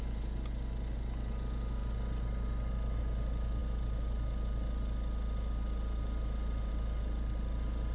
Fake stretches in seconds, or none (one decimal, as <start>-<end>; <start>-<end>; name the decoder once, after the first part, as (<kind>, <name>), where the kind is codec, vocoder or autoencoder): none